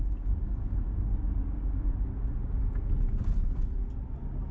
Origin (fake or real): real